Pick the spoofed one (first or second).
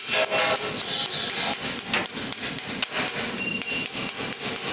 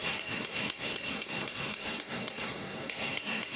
second